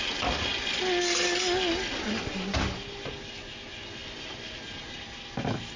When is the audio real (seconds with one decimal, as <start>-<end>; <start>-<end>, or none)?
0.0-5.8